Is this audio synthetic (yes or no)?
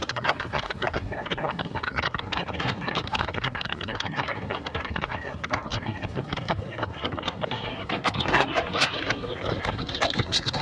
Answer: yes